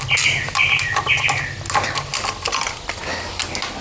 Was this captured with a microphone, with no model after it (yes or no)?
yes